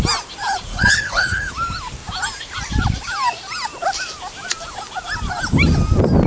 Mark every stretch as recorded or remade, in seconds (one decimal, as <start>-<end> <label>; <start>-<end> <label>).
0.0-0.7 recorded; 0.7-1.5 remade; 1.5-6.3 recorded